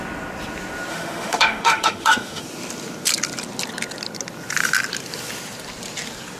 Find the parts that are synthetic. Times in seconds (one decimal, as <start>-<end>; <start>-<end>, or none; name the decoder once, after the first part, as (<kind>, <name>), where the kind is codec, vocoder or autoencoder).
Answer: 0.9-2.4 (autoencoder, DAC-VAE)